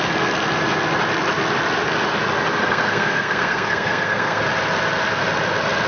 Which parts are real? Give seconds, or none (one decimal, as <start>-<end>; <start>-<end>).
0.0-2.6; 4.4-5.9